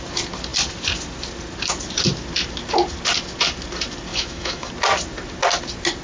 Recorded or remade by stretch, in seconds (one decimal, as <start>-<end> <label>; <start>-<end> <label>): 0.0-4.1 recorded; 4.1-4.7 remade; 4.7-6.0 recorded